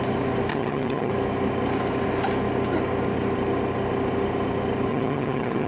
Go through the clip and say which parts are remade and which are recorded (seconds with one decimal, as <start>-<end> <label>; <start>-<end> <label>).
0.0-0.5 recorded; 0.5-1.1 remade; 1.1-4.9 recorded; 4.9-5.7 remade